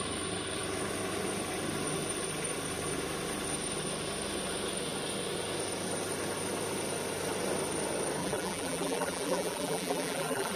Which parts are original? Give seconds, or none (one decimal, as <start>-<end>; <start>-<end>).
0.0-8.2